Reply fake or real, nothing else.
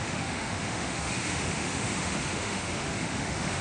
fake